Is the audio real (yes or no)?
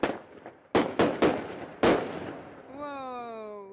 yes